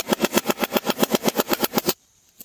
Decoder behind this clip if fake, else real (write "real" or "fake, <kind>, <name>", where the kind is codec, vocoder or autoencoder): fake, vocoder, BigVGAN v2